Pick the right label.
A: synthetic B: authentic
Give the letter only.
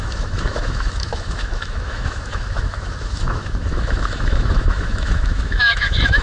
A